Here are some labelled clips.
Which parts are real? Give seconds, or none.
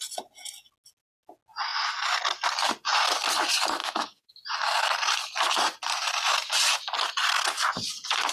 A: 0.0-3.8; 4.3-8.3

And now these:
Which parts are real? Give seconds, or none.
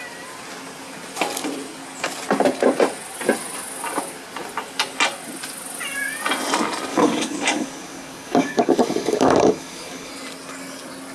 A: 0.0-6.9; 10.1-11.1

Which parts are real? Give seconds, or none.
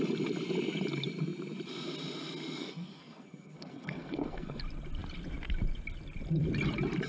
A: 0.0-2.6; 4.6-7.1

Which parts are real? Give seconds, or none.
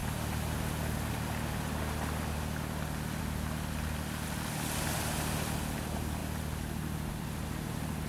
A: 0.0-8.1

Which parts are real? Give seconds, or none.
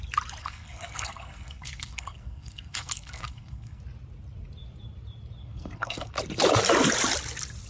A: 0.0-0.4; 3.8-5.4; 6.1-7.7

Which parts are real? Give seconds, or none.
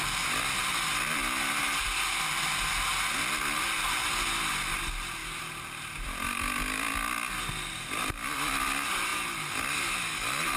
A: 0.0-10.6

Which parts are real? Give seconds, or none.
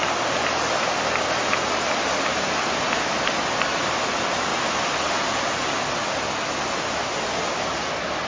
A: 0.0-8.3